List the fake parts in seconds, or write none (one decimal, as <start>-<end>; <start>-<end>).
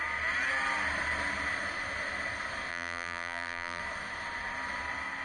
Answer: 2.7-3.8